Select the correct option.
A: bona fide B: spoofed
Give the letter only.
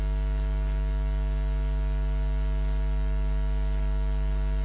A